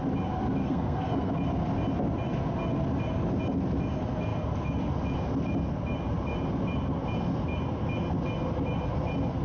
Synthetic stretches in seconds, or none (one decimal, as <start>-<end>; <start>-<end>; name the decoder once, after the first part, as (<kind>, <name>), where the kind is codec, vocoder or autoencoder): 0.6-1.3 (codec, SNAC)